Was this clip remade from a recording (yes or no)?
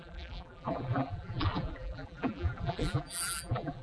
yes